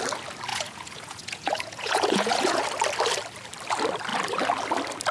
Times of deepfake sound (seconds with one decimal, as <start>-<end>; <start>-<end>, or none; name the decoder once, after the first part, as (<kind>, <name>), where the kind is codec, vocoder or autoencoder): 0.5-2.6 (vocoder, Vocos)